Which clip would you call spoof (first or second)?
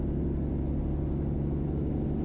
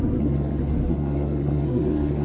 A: second